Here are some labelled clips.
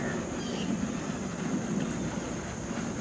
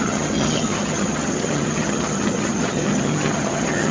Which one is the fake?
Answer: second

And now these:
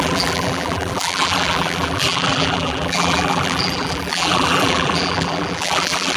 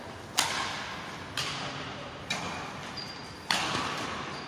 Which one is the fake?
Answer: first